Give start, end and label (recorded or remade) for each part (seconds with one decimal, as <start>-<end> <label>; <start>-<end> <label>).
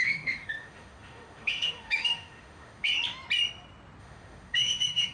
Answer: 0.0-2.9 remade; 2.9-4.0 recorded; 4.0-5.1 remade